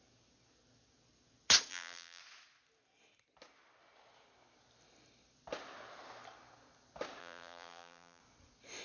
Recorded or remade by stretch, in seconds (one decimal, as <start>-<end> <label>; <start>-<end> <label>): 0.0-1.7 recorded; 1.7-2.2 remade; 2.2-7.2 recorded; 7.2-8.2 remade; 8.2-8.8 recorded